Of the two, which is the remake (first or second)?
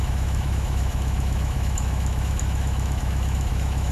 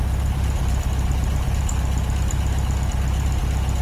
first